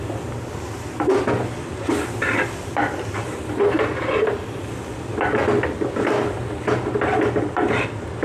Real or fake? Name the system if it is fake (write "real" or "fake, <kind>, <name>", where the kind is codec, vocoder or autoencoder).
fake, vocoder, BigVGAN v2